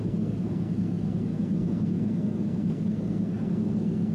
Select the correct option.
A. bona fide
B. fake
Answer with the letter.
B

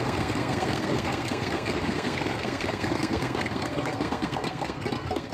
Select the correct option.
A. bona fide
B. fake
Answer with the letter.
B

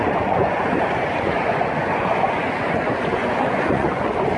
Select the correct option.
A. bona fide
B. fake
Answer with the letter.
B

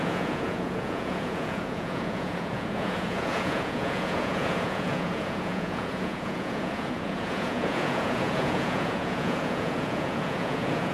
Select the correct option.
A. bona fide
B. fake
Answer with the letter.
B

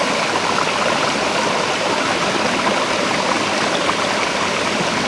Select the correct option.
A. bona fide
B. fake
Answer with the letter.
A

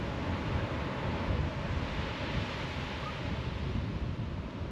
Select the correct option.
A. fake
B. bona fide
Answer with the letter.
B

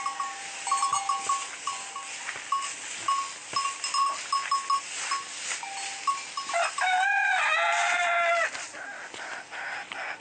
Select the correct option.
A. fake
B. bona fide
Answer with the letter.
B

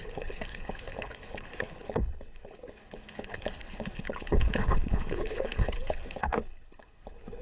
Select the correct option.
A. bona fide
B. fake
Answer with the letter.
B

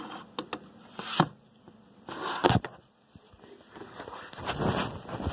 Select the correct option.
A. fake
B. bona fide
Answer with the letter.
B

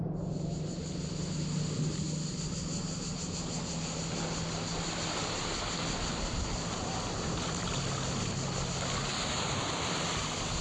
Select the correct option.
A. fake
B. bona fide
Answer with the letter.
B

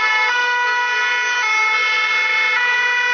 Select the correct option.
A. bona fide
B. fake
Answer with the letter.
A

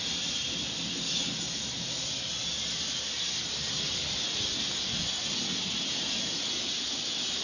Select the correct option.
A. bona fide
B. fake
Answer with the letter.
A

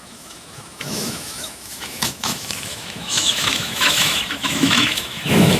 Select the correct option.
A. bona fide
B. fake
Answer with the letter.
B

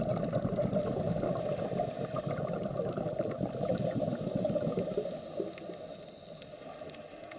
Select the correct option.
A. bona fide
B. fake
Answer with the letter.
A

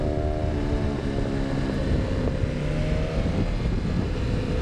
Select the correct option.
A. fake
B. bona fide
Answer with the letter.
B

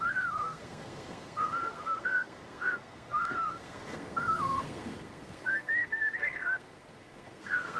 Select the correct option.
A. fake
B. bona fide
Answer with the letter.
A